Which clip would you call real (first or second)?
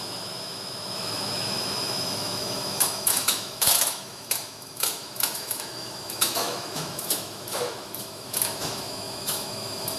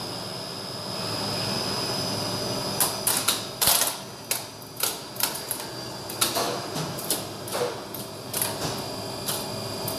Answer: second